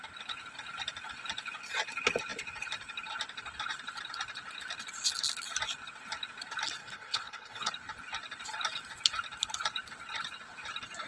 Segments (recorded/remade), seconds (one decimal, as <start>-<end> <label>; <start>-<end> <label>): 0.0-6.8 recorded; 6.8-7.7 remade; 7.7-11.1 recorded